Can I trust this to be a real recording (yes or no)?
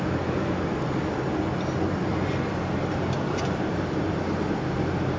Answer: yes